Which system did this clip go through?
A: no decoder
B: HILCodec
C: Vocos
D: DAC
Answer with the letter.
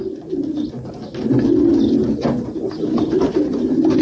A